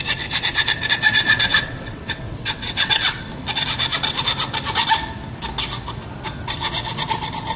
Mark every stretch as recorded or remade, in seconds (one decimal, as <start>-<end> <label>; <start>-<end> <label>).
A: 0.0-1.5 recorded; 1.5-3.3 remade; 3.3-7.6 recorded